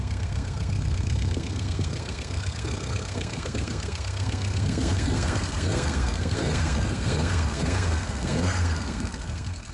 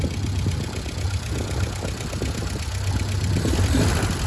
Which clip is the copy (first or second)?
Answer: first